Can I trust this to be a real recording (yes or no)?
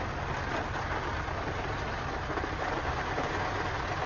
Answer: yes